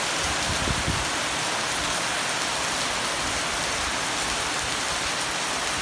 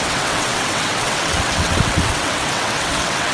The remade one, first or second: second